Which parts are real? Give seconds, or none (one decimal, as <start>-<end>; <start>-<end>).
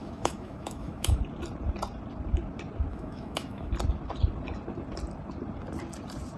1.2-2.9; 3.7-6.4